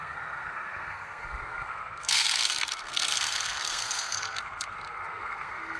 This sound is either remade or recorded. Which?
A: remade